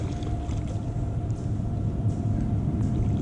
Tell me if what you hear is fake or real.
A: real